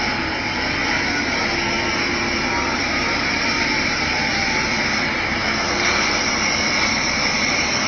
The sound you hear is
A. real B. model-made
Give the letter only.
A